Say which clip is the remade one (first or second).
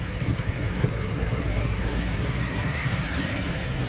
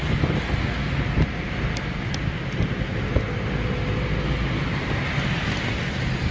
first